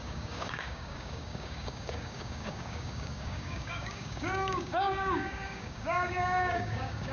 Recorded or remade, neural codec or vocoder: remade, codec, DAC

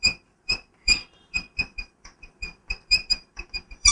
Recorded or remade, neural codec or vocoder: remade, vocoder, BigVGAN v2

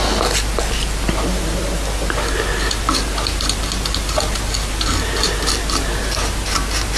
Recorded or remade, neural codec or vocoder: recorded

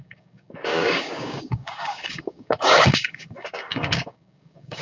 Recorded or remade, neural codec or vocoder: remade, codec, DAC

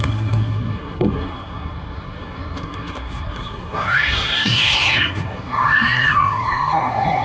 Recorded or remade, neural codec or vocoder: remade, codec, SNAC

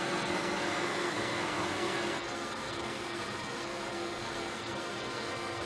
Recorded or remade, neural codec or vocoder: remade, codec, SNAC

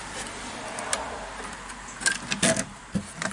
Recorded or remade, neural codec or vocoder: recorded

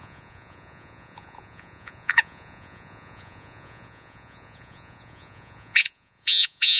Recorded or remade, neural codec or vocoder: remade, vocoder, Vocos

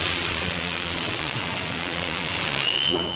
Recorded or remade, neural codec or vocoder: remade, vocoder, Vocos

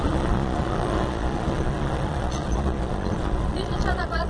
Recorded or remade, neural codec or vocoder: remade, vocoder, Vocos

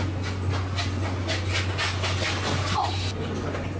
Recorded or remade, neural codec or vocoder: recorded